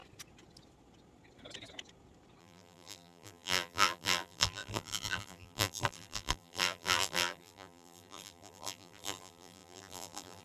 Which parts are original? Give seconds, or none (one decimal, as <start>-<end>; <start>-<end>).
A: 0.0-2.4